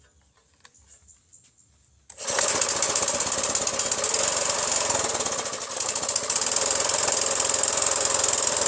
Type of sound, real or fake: real